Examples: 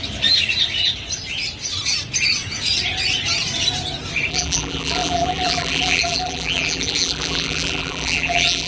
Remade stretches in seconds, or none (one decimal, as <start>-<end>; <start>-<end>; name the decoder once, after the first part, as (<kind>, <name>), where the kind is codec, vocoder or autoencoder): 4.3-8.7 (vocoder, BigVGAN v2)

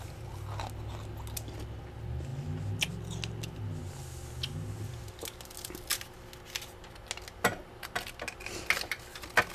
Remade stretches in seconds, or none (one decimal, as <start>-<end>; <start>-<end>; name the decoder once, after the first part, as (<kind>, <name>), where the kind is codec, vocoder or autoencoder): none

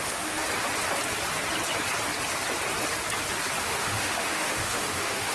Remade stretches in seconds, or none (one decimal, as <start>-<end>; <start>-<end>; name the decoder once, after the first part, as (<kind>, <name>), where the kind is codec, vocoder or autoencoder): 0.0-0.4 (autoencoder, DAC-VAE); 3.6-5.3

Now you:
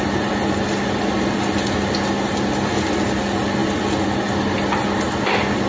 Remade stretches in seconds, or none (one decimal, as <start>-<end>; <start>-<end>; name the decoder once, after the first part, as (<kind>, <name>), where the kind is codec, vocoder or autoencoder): none